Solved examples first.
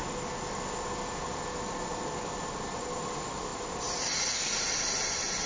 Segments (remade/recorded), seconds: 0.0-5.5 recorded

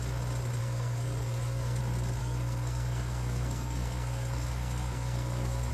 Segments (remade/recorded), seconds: 0.0-0.6 recorded; 0.6-1.8 remade; 1.8-2.2 recorded; 2.2-5.7 remade

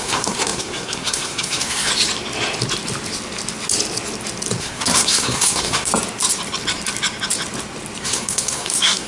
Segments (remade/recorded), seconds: 0.0-1.9 remade; 1.9-4.6 recorded; 4.6-5.9 remade; 5.9-8.0 recorded; 8.0-9.1 remade

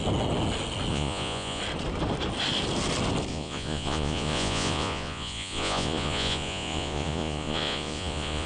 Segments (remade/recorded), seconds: 0.0-0.9 recorded; 0.9-1.6 remade; 1.6-3.3 recorded; 3.3-8.5 remade

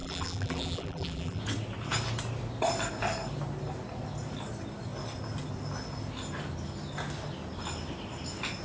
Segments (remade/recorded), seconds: 0.0-1.4 remade; 1.4-8.6 recorded

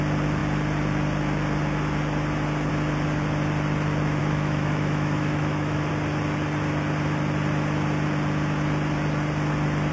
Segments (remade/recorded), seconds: 0.0-4.2 recorded; 4.2-5.9 remade; 5.9-9.9 recorded

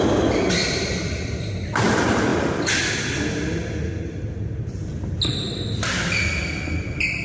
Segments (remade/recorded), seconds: 0.0-7.2 recorded